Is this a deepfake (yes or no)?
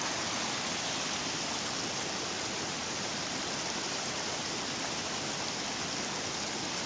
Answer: no